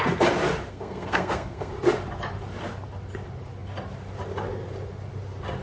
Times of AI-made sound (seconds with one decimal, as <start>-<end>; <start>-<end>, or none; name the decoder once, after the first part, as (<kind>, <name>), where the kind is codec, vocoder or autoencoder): 0.7-1.7 (codec, SNAC)